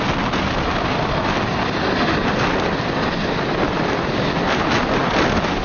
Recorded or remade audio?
recorded